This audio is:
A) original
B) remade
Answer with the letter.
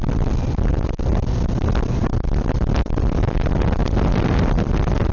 A